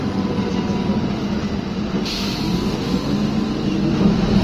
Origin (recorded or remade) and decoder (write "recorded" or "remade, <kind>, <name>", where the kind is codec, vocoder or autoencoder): recorded